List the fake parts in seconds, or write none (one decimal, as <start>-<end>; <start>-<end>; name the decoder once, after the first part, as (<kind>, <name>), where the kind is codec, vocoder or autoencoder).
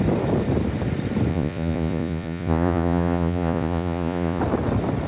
1.3-4.4 (vocoder, Vocos)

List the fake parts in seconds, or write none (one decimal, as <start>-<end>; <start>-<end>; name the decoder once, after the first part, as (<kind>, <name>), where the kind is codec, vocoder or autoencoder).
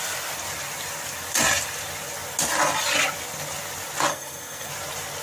4.1-4.7 (codec, SNAC)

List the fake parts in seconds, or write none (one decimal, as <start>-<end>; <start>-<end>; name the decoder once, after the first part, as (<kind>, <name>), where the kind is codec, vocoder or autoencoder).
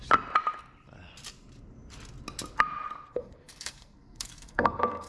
3.1-5.1 (codec, SNAC)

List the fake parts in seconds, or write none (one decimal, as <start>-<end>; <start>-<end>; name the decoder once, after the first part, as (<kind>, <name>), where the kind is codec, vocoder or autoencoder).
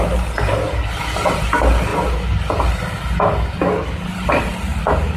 none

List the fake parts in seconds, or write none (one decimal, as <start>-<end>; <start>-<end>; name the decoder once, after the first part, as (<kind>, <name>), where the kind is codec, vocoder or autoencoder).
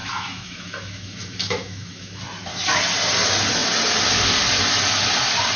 0.0-2.2 (autoencoder, DAC-VAE)